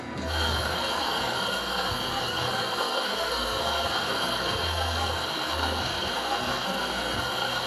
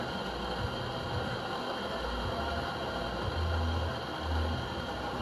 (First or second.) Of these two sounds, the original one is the second